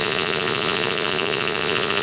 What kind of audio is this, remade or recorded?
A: remade